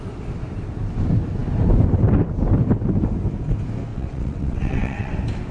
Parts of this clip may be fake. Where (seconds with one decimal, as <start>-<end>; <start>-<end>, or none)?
3.9-5.1